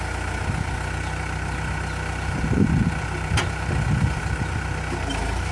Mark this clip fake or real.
real